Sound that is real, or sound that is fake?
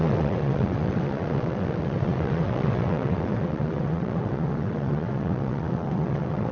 fake